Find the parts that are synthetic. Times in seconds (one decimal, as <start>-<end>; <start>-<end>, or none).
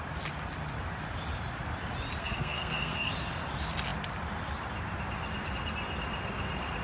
2.2-3.1